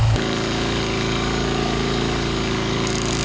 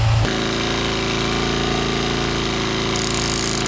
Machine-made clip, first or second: first